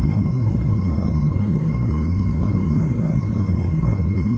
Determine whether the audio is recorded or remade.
remade